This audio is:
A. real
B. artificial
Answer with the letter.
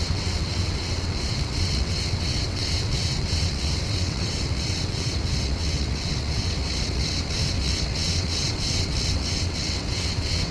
B